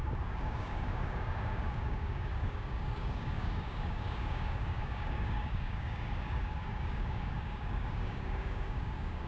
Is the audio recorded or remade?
remade